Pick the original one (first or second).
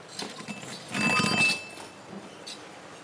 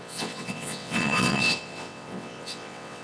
first